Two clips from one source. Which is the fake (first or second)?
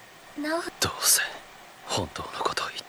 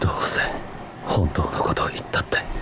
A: second